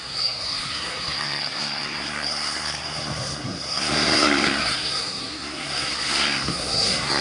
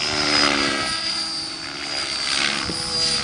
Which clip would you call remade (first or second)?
first